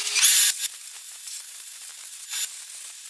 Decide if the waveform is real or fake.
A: real